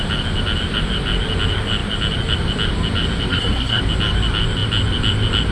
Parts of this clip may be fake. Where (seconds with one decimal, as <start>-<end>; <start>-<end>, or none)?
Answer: 3.3-3.8